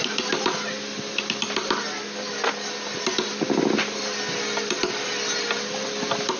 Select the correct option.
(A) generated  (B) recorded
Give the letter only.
B